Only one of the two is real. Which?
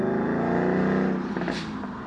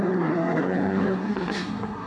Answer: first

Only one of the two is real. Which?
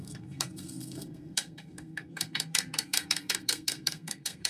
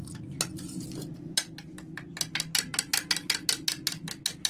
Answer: second